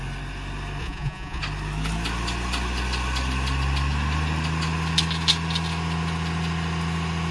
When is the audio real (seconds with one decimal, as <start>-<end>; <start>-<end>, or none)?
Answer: 0.0-0.8; 1.4-7.3